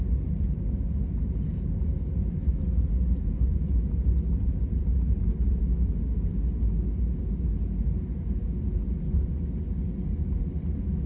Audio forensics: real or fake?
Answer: real